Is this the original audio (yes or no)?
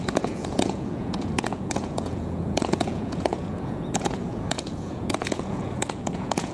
no